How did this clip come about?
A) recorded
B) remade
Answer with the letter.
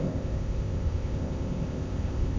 B